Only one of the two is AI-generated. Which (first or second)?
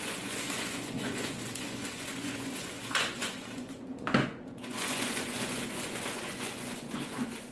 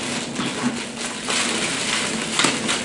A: first